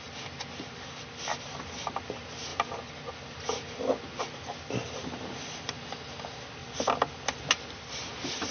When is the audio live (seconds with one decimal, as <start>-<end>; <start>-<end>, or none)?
0.0-8.5